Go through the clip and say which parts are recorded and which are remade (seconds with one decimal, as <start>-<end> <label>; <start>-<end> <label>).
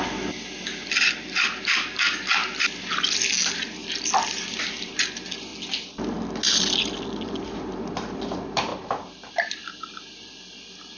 0.0-2.4 remade; 2.4-3.7 recorded; 3.7-5.5 remade; 5.5-7.9 recorded; 7.9-8.7 remade; 8.7-9.5 recorded; 9.5-11.0 remade